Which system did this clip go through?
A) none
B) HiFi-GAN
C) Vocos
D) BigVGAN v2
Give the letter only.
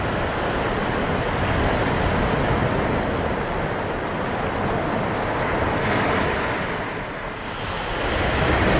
A